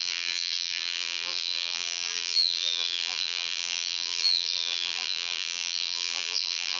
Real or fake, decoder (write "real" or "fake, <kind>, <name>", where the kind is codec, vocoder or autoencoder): fake, vocoder, BigVGAN v2